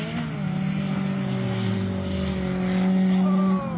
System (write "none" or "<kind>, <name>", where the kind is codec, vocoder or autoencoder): none